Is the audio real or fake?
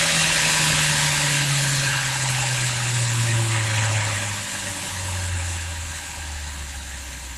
fake